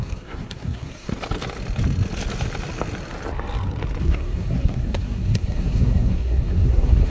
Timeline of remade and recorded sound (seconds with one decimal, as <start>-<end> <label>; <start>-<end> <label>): 0.0-1.1 remade; 1.1-4.0 recorded; 4.0-7.1 remade